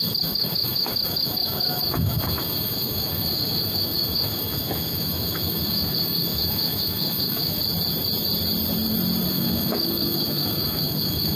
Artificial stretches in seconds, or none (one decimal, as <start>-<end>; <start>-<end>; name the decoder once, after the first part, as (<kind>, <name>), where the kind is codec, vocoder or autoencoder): 0.0-7.6 (autoencoder, DAC-VAE); 9.3-11.4